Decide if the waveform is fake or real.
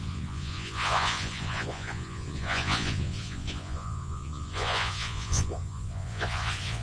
fake